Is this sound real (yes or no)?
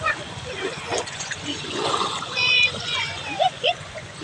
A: no